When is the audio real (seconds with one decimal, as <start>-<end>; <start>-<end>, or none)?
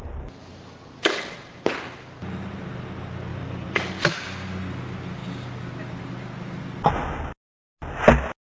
0.0-3.3; 4.2-8.5